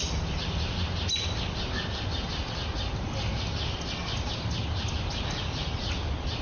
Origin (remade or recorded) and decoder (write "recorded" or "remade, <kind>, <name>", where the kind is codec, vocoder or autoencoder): recorded